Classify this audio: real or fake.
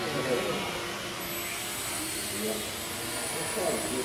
real